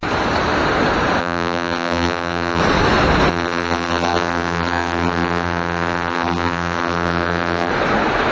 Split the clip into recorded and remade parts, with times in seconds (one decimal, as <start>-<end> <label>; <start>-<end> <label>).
0.0-1.2 recorded; 1.2-2.6 remade; 2.6-3.3 recorded; 3.3-7.7 remade; 7.7-8.3 recorded